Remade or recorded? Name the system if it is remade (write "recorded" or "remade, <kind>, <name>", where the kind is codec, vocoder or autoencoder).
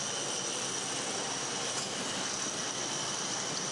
recorded